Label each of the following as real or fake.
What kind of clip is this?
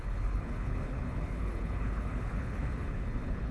fake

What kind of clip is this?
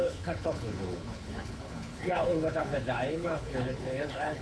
fake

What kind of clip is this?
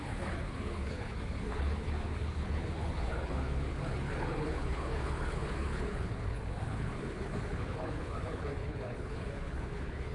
fake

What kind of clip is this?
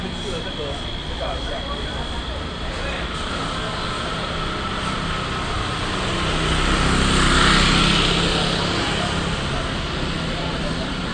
real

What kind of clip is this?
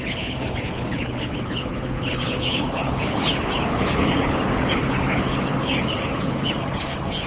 fake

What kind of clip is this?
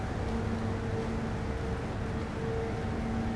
real